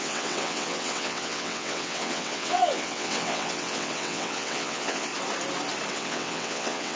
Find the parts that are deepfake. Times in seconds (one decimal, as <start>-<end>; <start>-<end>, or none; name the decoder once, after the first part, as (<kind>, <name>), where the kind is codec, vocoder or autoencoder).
0.0-5.1 (vocoder, WaveNeXt); 5.9-7.0